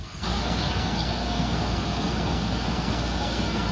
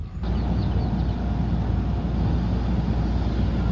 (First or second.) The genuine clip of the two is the second